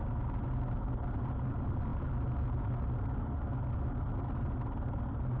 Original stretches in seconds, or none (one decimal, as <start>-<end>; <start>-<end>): 0.0-5.4